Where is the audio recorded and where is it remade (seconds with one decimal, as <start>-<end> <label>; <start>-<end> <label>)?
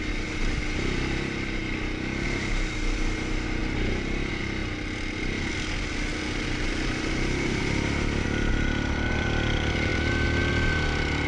0.0-11.3 recorded